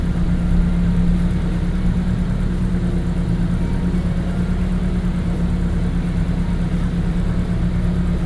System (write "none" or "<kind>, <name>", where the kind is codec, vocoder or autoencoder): none